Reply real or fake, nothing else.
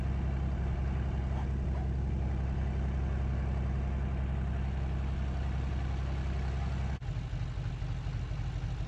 real